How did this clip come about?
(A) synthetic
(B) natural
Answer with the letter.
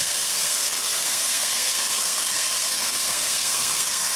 A